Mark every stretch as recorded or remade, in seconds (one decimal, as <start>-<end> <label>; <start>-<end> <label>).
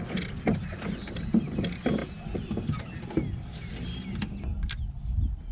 0.0-5.5 recorded